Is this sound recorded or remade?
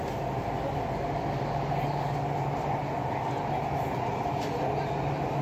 recorded